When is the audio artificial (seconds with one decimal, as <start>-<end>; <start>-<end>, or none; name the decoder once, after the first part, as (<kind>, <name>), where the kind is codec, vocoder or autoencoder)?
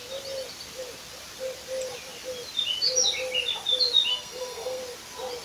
4.1-4.8 (codec, SNAC)